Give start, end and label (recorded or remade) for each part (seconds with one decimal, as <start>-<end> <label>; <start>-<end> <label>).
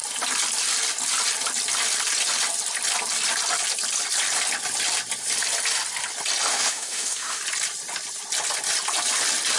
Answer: 0.0-6.5 recorded; 6.5-7.4 remade; 7.4-9.6 recorded